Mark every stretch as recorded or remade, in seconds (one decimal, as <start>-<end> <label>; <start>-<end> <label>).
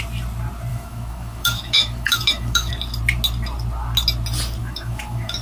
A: 0.0-0.7 recorded; 0.7-2.7 remade; 2.7-4.6 recorded; 4.6-5.4 remade